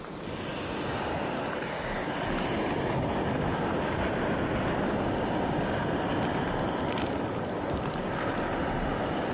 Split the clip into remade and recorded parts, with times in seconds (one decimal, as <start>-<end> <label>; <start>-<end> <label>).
0.0-9.3 recorded